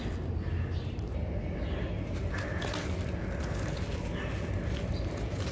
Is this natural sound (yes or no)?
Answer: yes